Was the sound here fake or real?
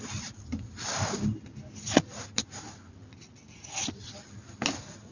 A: real